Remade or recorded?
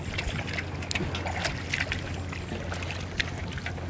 recorded